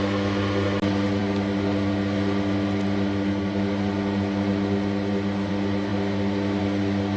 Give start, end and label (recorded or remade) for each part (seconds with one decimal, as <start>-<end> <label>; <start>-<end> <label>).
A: 0.0-7.2 recorded